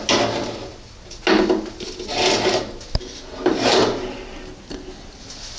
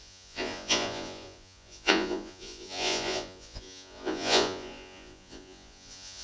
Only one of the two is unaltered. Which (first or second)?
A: first